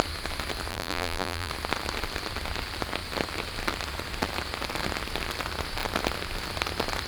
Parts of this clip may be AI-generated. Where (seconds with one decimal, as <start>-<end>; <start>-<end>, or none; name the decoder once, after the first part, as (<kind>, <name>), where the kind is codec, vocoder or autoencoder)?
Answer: 0.7-1.5 (vocoder, BigVGAN v2)